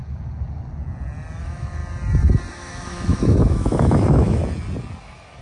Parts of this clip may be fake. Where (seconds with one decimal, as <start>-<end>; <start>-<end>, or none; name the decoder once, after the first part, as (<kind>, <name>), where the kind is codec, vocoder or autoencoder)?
1.4-1.8 (autoencoder, DAC-VAE); 2.5-4.4; 5.0-5.4